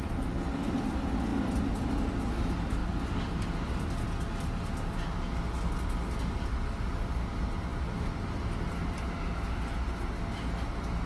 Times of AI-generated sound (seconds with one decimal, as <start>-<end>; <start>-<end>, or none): none